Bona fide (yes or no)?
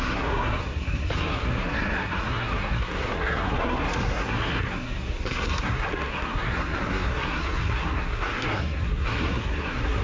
no